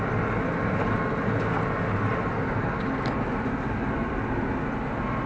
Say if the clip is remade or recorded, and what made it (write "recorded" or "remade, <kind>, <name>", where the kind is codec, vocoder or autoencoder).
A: recorded